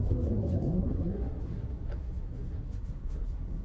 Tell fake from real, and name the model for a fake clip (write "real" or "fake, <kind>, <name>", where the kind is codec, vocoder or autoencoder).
fake, codec, SNAC